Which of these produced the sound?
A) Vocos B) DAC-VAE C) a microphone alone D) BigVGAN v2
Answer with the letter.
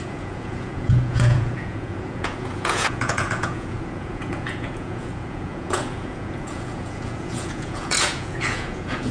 A